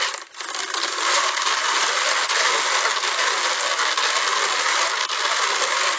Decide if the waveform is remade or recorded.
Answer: recorded